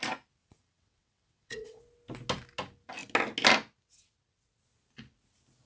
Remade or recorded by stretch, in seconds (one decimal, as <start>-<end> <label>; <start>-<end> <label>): 0.0-0.4 recorded; 0.4-1.8 remade; 1.8-5.7 recorded